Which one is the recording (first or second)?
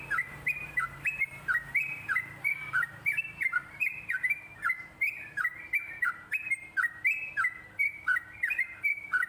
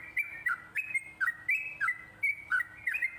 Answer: second